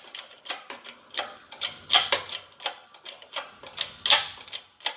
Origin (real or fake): real